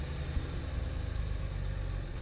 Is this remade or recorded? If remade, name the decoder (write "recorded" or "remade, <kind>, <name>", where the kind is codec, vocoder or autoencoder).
recorded